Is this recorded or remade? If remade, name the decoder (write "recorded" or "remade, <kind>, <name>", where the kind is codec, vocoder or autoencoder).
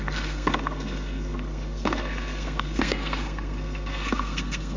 remade, codec, SNAC